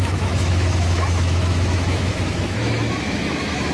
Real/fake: fake